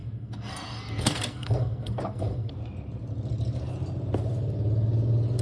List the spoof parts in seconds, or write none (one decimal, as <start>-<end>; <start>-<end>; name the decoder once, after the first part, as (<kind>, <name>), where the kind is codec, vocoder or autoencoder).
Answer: 0.0-2.5 (codec, SNAC)